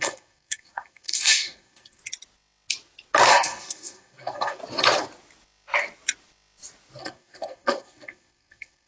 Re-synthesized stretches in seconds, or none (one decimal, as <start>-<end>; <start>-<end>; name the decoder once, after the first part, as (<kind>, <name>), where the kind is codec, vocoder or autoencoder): 0.0-2.0 (codec, SNAC); 3.3-4.6; 7.0-8.9